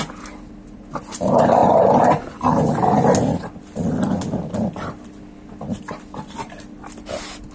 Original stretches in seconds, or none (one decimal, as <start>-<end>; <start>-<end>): 0.0-7.5

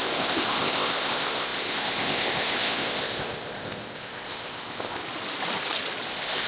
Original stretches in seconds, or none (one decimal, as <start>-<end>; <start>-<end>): 5.0-6.1